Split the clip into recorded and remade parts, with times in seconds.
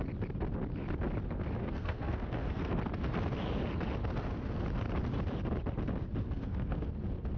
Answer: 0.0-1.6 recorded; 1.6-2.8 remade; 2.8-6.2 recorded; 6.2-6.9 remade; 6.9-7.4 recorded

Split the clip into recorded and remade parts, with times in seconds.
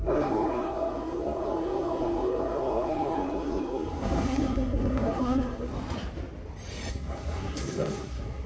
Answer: 0.0-5.7 remade; 5.7-6.9 recorded; 6.9-8.5 remade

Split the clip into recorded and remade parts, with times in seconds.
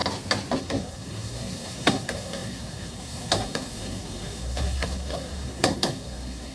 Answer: 0.0-0.6 recorded; 0.6-6.5 remade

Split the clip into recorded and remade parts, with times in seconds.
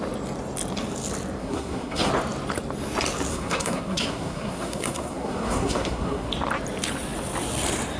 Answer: 0.0-1.4 recorded; 1.4-2.1 remade; 2.1-3.3 recorded; 3.3-6.3 remade; 6.3-8.0 recorded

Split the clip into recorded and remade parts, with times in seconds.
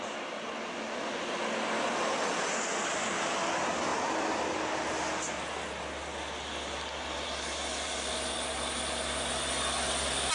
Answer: 0.0-10.3 recorded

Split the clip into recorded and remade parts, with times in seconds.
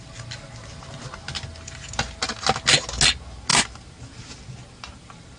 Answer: 0.0-5.4 recorded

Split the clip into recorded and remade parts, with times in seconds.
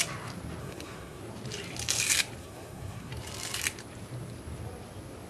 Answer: 0.0-0.6 recorded; 0.6-1.2 remade; 1.2-2.4 recorded; 2.4-3.1 remade; 3.1-5.3 recorded